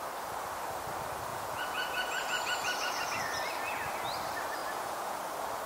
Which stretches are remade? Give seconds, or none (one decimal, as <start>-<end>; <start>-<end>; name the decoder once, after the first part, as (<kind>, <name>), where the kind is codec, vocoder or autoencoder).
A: 1.3-3.2 (vocoder, Vocos); 4.6-5.2